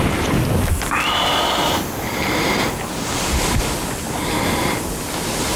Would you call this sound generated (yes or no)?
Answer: no